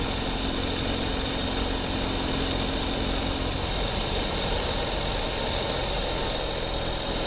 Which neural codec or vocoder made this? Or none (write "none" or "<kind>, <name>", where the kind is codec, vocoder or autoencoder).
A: none